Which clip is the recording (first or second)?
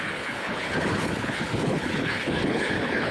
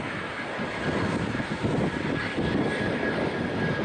second